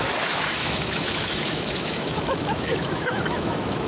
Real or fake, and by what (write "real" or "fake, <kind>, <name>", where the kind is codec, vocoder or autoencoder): fake, autoencoder, DAC-VAE